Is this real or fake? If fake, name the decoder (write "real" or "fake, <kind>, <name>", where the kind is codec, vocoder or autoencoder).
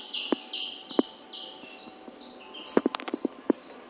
real